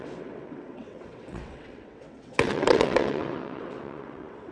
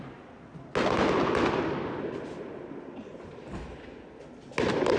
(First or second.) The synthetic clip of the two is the first